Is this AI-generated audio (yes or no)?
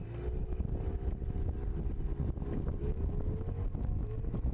no